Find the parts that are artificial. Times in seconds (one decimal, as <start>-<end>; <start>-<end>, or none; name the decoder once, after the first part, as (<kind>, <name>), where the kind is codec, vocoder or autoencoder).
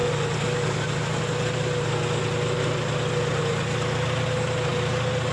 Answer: none